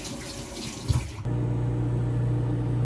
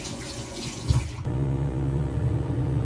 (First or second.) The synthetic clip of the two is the second